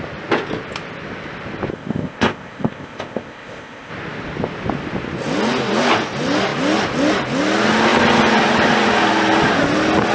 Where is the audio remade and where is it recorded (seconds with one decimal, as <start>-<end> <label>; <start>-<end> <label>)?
0.0-1.7 recorded; 1.7-3.9 remade; 3.9-10.1 recorded